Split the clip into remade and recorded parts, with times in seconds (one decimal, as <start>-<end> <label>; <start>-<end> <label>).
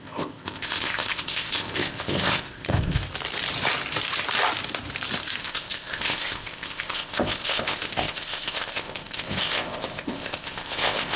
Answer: 0.0-3.0 remade; 3.0-5.4 recorded; 5.4-11.2 remade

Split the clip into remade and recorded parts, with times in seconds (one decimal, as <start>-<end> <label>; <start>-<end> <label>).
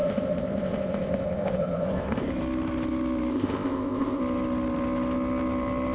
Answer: 0.0-2.3 remade; 2.3-3.3 recorded; 3.3-4.2 remade; 4.2-5.9 recorded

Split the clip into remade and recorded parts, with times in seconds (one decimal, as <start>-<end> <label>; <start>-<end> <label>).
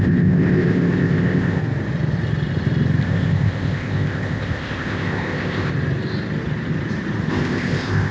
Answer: 0.0-1.6 remade; 1.6-3.0 recorded; 3.0-5.7 remade; 5.7-7.3 recorded; 7.3-8.1 remade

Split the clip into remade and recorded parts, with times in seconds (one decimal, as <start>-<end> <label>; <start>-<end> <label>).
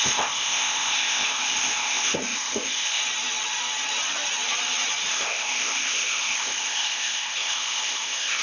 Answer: 0.0-3.0 remade; 3.0-5.1 recorded; 5.1-8.4 remade